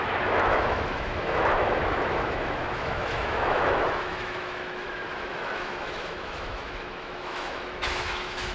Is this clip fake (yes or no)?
yes